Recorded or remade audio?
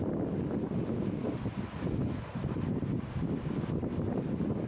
remade